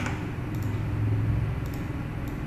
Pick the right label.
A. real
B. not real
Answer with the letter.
A